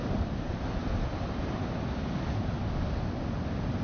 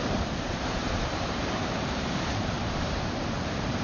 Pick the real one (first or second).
first